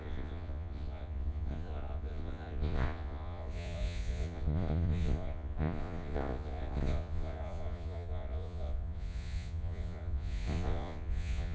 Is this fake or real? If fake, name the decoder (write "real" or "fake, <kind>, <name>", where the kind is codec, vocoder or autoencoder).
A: fake, vocoder, Vocos